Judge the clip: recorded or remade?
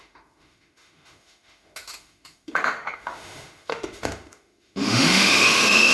remade